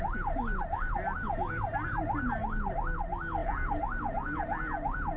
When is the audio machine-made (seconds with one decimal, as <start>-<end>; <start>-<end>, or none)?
none